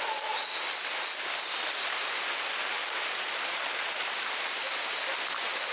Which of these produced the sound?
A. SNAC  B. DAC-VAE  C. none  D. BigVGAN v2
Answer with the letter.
C